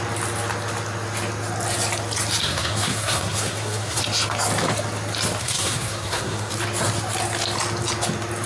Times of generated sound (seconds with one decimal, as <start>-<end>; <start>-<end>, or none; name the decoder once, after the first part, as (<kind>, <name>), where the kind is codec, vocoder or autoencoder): 2.4-4.0 (codec, SNAC); 5.4-6.5